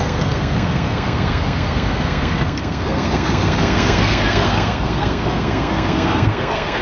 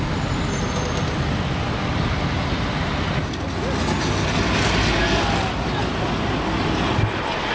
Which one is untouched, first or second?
second